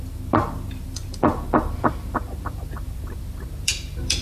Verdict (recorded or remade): remade